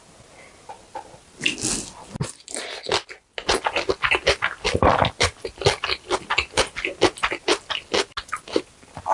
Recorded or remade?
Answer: recorded